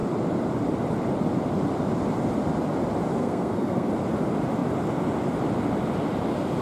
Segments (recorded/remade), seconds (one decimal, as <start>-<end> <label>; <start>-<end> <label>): 0.0-3.2 recorded; 3.2-3.9 remade; 3.9-6.6 recorded